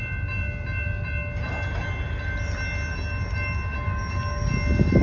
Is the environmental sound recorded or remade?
recorded